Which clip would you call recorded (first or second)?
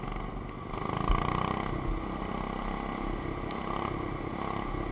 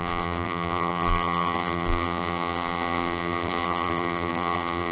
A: first